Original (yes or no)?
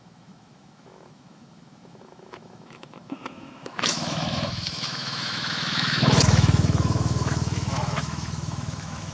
no